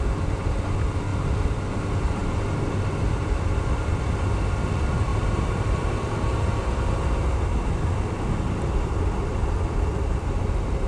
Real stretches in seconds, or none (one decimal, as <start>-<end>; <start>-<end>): 0.0-2.2; 4.2-5.1; 6.5-9.4; 10.4-10.9